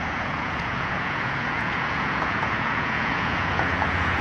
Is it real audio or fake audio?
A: fake